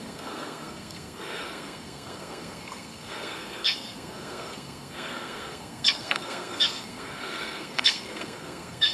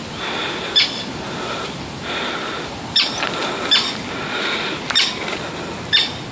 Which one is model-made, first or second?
first